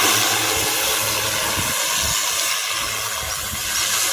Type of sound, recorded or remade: recorded